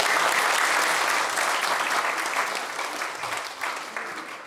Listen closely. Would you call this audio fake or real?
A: real